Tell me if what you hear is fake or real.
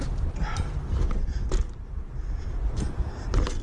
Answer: real